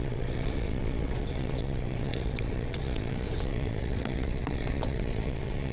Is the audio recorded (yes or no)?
no